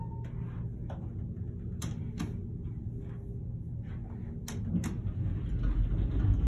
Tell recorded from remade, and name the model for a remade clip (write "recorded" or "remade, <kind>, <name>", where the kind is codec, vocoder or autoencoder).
recorded